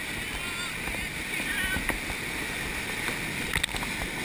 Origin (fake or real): real